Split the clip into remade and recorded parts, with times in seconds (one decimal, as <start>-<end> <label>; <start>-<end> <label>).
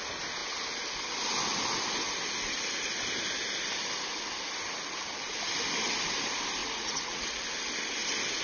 0.0-6.6 recorded; 6.6-7.4 remade; 7.4-8.4 recorded